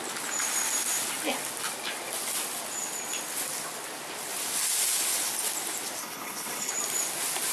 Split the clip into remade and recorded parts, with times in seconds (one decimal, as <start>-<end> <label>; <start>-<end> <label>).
0.0-6.0 recorded; 6.0-6.7 remade; 6.7-7.5 recorded